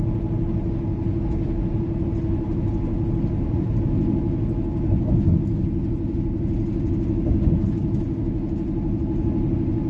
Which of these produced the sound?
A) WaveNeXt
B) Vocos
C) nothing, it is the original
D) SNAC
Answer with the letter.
C